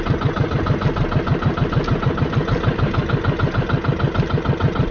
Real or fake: real